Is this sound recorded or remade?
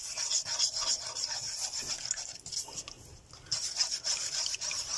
recorded